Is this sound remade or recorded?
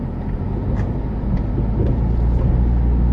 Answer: recorded